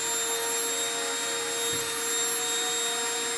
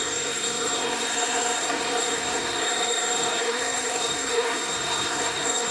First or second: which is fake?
second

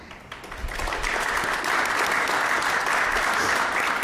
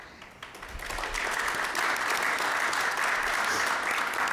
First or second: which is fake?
first